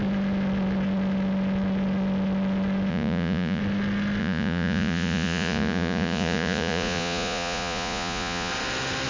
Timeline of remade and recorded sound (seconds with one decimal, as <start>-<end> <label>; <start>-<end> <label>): 0.0-2.9 recorded; 2.9-3.6 remade; 3.6-4.2 recorded; 4.2-8.5 remade; 8.5-9.1 recorded